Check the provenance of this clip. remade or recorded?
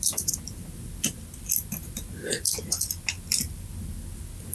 recorded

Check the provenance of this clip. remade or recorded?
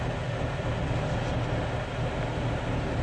recorded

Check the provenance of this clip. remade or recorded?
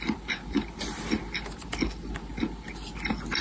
recorded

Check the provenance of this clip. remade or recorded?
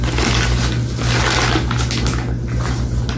recorded